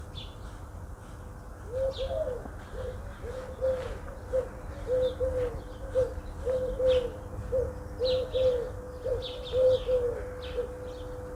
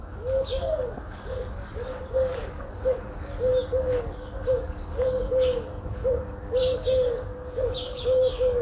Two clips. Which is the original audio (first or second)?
first